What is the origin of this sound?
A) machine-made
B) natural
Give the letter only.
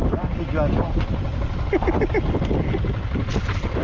B